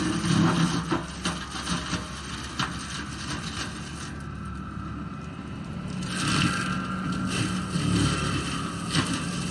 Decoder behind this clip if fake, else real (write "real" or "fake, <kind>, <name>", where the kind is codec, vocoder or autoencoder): real